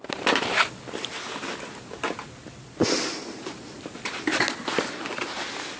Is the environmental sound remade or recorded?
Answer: recorded